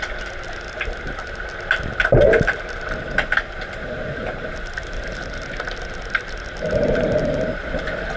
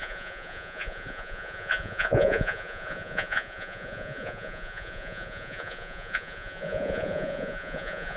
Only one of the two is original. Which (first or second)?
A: first